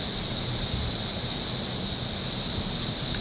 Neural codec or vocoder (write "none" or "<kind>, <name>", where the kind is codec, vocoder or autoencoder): none